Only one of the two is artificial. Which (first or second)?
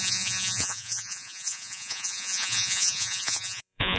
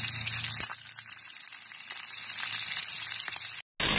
first